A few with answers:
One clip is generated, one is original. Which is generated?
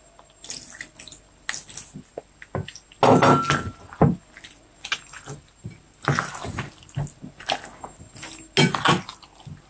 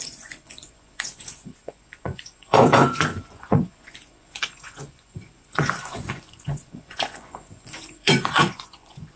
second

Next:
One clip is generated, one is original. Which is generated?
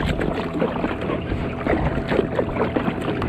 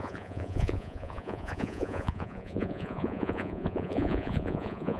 second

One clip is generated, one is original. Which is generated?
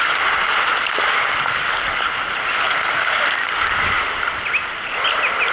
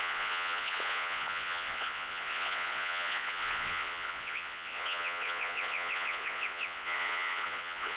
second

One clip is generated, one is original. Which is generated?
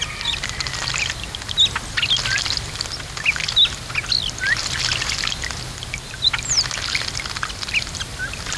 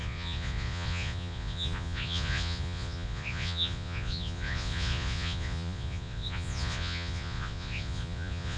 second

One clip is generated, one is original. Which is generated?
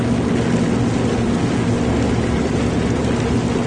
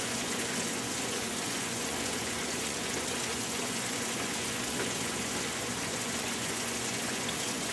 second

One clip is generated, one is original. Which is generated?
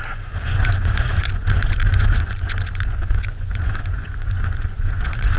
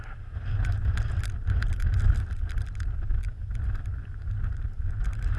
first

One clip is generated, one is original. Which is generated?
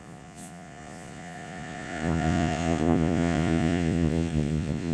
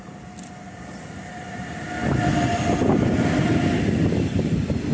first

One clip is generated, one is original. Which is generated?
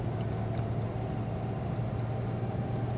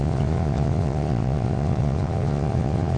second